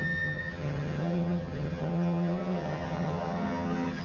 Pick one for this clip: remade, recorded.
remade